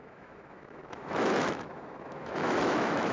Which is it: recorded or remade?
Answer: remade